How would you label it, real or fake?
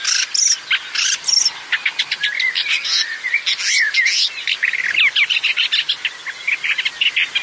real